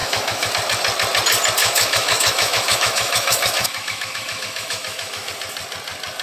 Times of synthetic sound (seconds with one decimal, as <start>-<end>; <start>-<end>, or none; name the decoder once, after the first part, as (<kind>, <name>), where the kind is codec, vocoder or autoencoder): 0.0-0.5 (autoencoder, DAC-VAE); 1.6-5.3